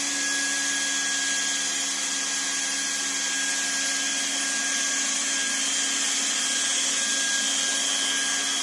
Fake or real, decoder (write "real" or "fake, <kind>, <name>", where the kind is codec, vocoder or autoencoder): real